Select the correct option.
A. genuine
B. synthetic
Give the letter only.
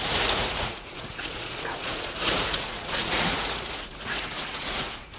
B